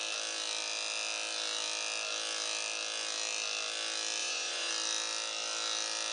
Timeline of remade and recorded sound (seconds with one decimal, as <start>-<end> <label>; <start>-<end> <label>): 0.0-4.2 recorded; 4.2-4.7 remade; 4.7-6.1 recorded